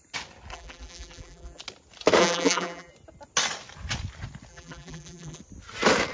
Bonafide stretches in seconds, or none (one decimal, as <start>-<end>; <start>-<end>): 0.0-0.5; 1.6-2.2; 2.9-4.5; 5.4-6.1